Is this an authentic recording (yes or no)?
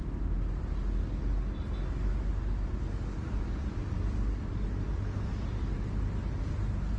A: yes